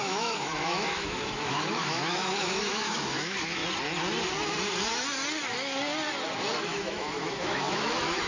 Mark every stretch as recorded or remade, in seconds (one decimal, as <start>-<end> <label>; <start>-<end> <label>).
0.0-3.6 remade; 3.6-6.6 recorded; 6.6-8.3 remade